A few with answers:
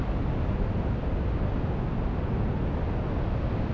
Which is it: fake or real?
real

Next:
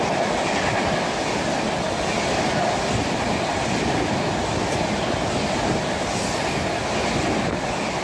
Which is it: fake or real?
real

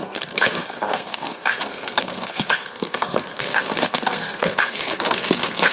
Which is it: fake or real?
fake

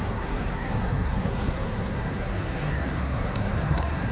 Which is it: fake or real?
fake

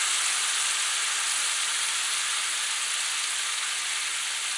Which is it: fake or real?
real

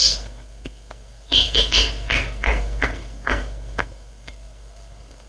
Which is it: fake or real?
fake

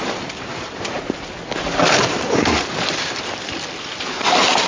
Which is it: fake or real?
real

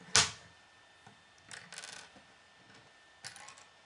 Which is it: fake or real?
real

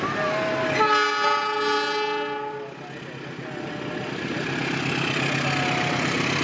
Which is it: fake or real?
real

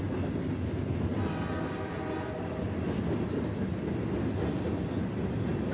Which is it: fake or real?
real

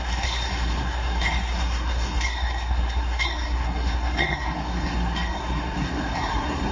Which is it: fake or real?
fake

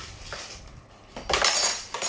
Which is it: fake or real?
real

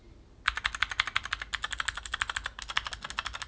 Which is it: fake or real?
real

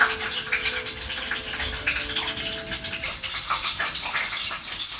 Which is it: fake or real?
real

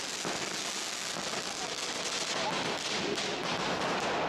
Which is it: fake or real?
real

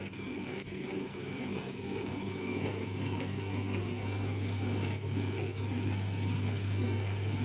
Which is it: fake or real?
fake